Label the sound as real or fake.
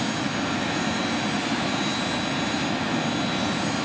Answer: real